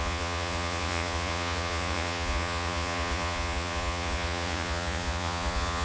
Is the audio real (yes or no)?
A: no